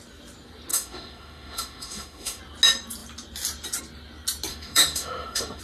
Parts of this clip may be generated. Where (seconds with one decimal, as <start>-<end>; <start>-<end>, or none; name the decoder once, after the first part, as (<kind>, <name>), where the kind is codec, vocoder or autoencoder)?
0.7-2.4 (autoencoder, DAC-VAE); 4.5-5.6